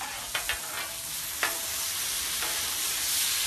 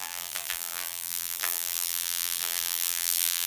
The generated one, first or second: second